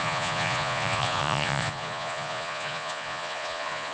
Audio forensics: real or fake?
fake